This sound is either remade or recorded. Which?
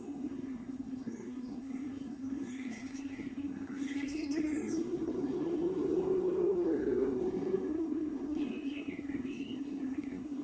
remade